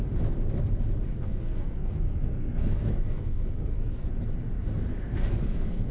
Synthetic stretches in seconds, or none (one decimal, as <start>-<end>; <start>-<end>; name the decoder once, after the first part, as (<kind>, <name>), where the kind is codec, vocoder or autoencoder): 1.1-4.1 (codec, SNAC); 5.0-5.9